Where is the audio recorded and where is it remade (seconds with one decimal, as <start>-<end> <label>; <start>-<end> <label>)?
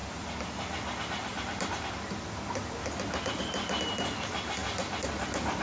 0.0-5.6 recorded